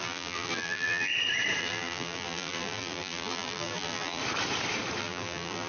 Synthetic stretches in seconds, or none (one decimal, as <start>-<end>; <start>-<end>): 0.0-1.1; 1.6-4.2; 5.0-5.7